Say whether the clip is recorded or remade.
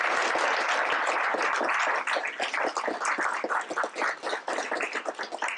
recorded